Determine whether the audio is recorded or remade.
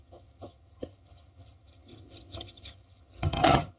remade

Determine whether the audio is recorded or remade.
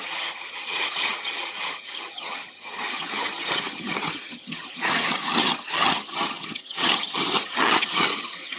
remade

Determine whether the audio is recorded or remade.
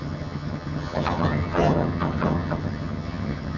remade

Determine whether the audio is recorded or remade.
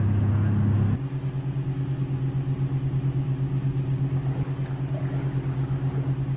recorded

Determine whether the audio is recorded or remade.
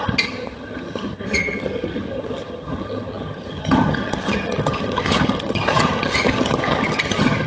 remade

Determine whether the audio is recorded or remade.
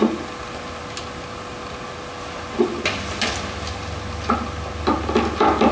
recorded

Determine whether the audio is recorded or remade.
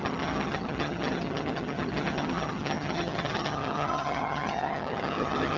remade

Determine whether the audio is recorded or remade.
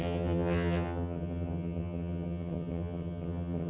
remade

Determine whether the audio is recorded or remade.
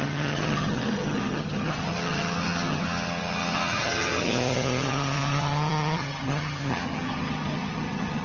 remade